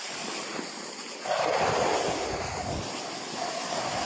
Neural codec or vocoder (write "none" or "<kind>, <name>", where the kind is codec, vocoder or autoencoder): none